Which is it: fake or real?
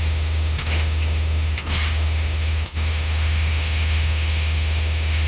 fake